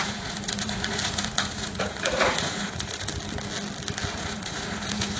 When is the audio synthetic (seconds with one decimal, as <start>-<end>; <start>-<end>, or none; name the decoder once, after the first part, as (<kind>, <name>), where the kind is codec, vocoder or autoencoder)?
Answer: 0.0-3.1 (vocoder, Vocos); 4.1-5.2